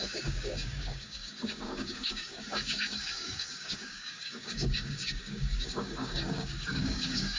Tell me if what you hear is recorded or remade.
remade